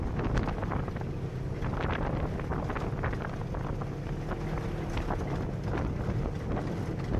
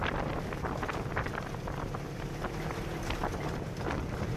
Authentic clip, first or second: first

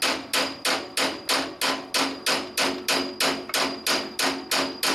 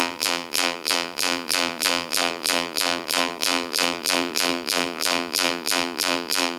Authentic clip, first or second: first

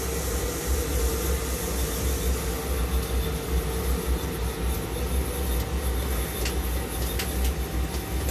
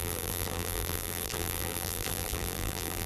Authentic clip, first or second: first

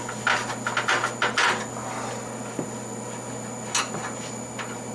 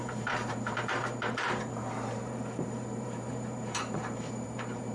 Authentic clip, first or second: first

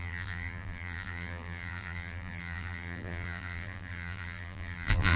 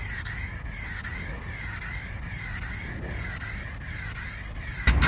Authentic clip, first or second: second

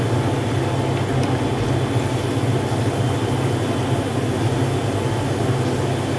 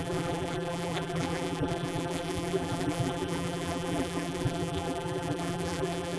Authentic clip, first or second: first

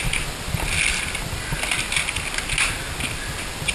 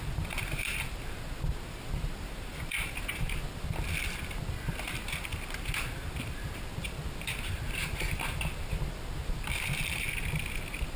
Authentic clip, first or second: first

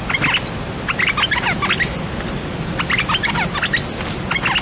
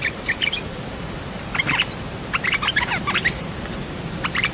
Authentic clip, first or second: first